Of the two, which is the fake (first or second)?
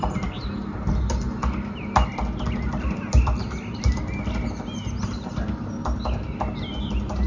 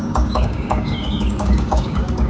second